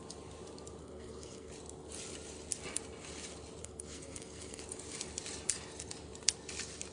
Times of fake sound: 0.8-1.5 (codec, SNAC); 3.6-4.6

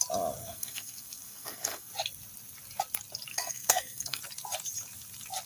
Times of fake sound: 0.4-1.9 (codec, SNAC); 3.3-4.2